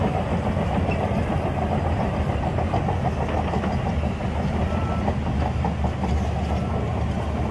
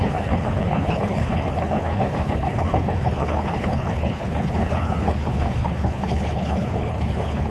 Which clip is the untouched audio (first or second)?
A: first